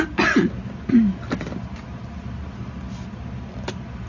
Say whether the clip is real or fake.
real